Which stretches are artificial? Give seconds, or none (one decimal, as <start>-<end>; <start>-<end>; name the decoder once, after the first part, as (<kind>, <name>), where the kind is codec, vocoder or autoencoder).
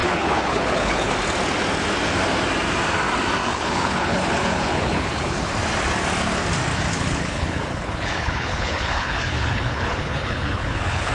0.0-1.1 (codec, HILCodec); 3.5-5.5; 6.9-11.1